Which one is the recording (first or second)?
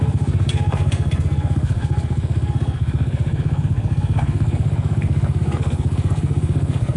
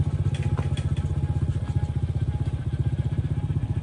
second